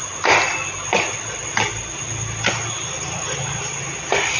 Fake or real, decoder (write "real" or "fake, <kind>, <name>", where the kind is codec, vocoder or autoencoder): real